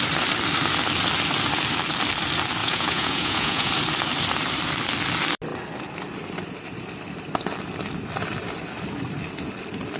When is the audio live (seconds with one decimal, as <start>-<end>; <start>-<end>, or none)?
0.0-2.6; 3.7-10.0